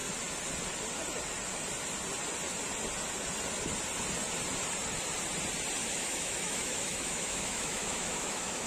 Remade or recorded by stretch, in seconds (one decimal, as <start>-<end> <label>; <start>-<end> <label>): 0.0-5.8 recorded; 5.8-8.7 remade